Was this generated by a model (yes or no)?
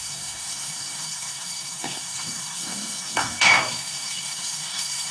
yes